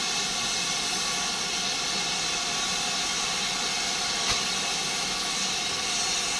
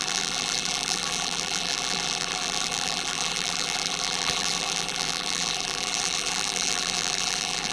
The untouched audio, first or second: first